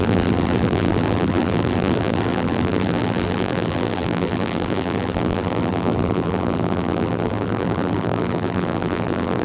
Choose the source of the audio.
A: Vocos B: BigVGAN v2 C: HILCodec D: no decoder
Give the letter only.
B